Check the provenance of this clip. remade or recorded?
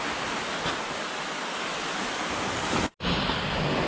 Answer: recorded